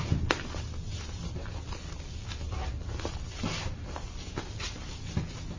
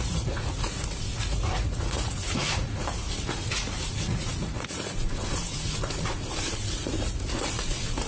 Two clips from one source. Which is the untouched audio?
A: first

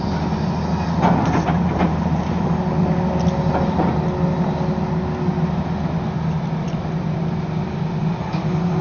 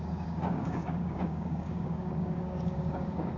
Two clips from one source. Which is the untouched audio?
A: first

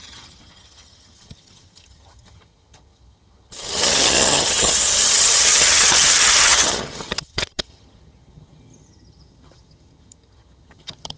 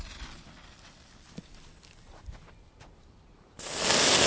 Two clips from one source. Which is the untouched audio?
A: second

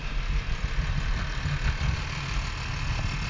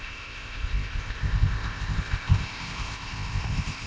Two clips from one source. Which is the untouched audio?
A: first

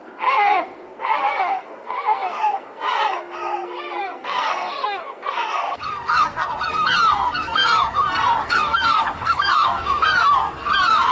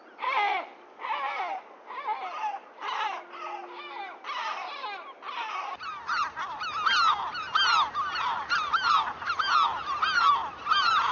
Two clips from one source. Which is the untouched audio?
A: second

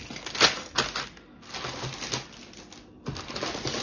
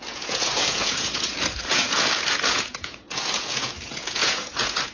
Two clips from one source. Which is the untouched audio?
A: first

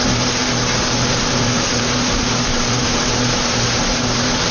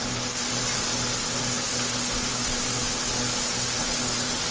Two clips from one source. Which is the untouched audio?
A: second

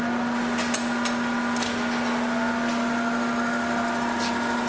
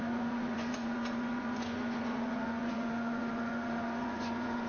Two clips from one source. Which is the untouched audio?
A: first